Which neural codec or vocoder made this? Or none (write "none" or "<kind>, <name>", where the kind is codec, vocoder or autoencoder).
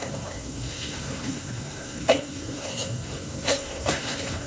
codec, SNAC